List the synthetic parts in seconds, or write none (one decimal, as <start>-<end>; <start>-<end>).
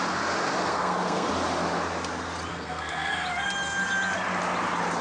0.7-1.3; 2.5-3.1